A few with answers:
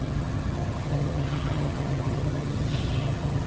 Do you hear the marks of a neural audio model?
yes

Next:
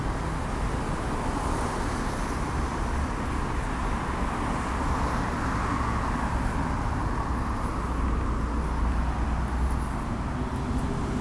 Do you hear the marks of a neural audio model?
no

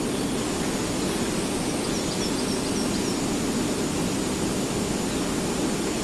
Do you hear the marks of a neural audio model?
no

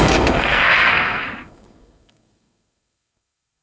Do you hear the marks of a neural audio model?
yes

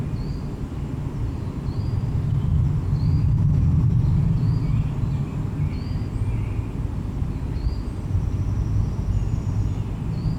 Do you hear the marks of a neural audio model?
no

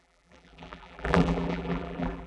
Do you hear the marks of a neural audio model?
yes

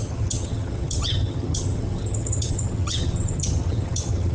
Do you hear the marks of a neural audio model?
yes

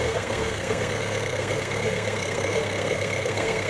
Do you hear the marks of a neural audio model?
yes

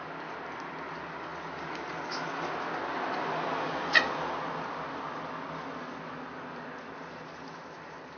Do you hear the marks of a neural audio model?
no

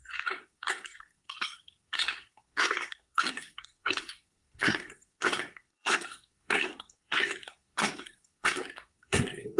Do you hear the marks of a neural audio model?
yes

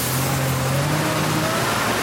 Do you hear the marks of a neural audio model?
no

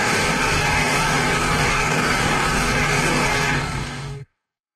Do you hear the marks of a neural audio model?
yes